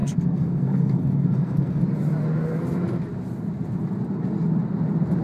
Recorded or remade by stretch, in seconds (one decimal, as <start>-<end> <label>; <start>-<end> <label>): 0.0-1.8 remade; 1.8-5.2 recorded